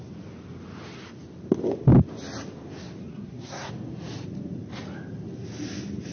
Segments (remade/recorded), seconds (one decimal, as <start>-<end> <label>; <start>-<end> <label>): 0.0-3.1 recorded; 3.1-3.7 remade; 3.7-6.1 recorded